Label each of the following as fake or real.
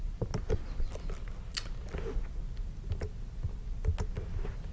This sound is real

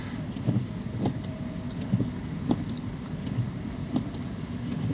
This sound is real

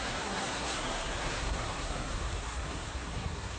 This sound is fake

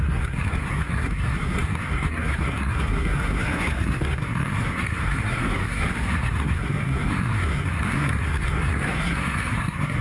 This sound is fake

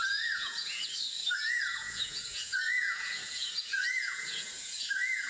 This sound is fake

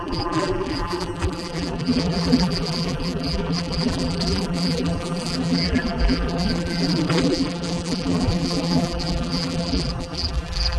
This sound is fake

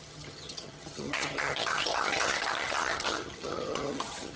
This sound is fake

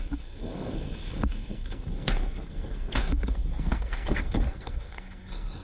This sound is fake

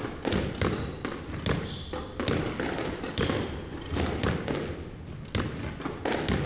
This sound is real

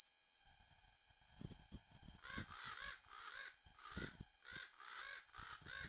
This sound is real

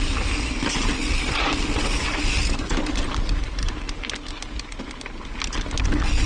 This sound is real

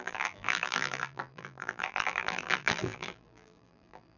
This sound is fake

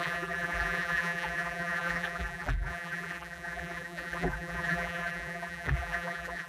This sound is fake